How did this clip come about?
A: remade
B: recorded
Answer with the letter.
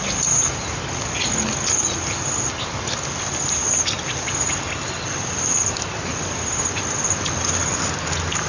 B